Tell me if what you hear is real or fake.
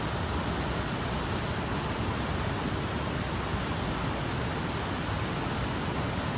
real